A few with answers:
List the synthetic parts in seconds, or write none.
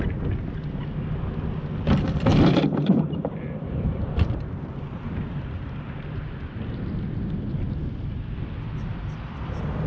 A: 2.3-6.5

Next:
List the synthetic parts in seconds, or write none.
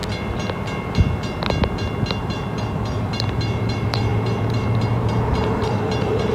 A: 2.2-6.3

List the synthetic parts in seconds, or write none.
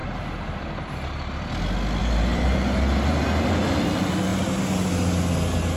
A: 0.0-1.3; 2.0-3.8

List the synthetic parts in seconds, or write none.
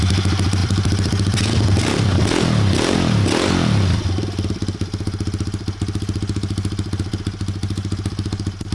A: 0.6-2.3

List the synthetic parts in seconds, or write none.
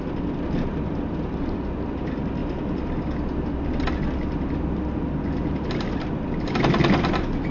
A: none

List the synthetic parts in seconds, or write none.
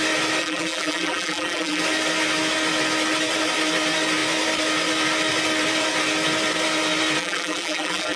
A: 0.4-1.8; 7.2-8.2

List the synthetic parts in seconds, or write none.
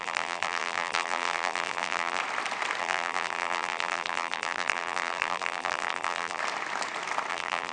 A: 0.0-2.2; 2.8-6.4; 7.3-7.7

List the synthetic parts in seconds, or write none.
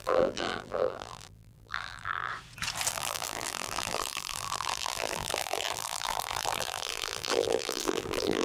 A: 0.0-2.3; 2.9-8.4